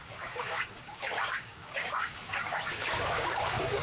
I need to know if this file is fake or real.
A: fake